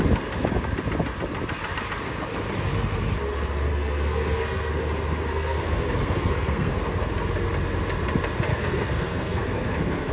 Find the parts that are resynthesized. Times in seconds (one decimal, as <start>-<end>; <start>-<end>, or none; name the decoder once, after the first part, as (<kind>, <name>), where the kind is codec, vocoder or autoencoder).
3.7-4.7 (codec, SNAC); 5.3-7.1; 8.5-10.1